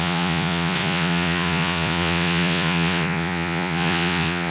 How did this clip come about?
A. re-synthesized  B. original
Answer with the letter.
A